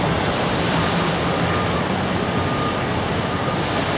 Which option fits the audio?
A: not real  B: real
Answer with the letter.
B